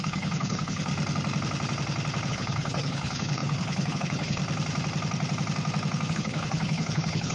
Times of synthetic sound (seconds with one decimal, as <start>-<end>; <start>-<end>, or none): 0.0-0.9; 2.3-4.4; 6.1-7.3